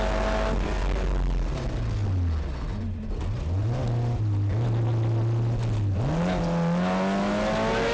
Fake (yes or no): no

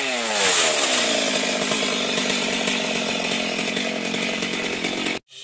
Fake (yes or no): no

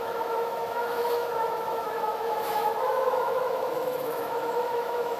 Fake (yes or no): yes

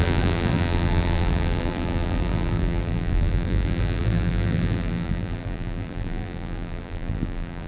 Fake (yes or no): yes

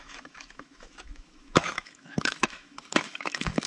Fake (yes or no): yes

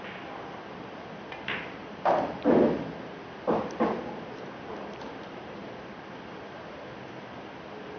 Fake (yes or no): no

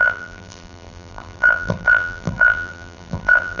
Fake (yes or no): yes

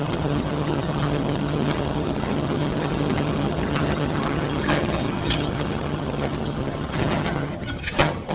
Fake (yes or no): yes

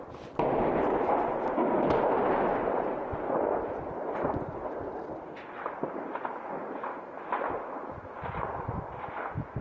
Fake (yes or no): no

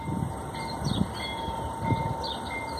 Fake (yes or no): no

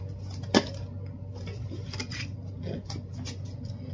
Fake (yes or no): no